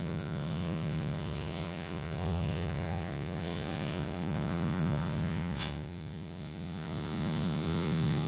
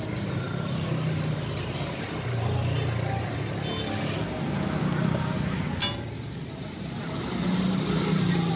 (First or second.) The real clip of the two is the second